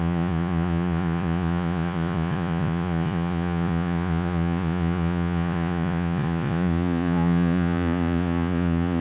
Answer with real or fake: fake